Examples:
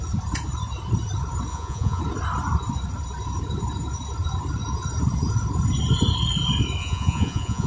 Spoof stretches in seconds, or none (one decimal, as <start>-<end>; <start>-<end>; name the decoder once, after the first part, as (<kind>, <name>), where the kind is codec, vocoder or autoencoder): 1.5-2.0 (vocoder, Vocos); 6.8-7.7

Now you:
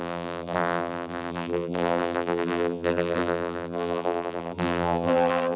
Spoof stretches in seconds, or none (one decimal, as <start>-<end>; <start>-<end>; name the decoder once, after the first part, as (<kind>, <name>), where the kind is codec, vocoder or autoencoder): 0.0-5.6 (vocoder, BigVGAN v2)

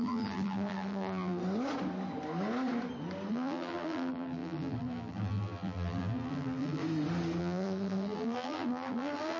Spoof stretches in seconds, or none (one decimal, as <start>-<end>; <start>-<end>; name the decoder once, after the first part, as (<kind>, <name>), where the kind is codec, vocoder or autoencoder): 0.0-1.4 (vocoder, BigVGAN v2); 3.3-6.8; 7.4-9.4

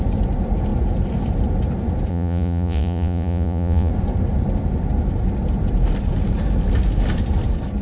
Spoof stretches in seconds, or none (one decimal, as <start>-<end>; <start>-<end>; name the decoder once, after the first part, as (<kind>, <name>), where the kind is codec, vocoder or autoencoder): 2.1-3.9 (vocoder, Vocos)